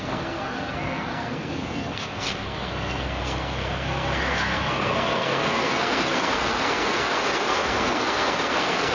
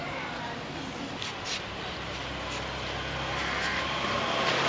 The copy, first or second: first